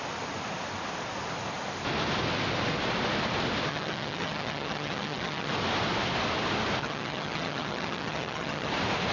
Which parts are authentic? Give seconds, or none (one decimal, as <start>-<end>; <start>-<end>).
0.0-3.7; 5.5-6.8; 8.7-9.1

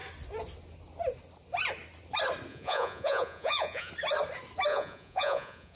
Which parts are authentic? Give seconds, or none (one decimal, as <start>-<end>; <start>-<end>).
0.0-2.5; 3.9-4.7

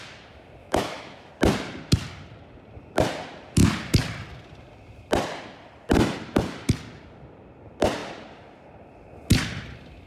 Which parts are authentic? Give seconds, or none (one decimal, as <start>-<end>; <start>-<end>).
0.0-0.6; 1.3-10.1